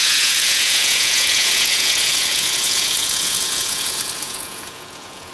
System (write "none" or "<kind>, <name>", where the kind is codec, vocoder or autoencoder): vocoder, Vocos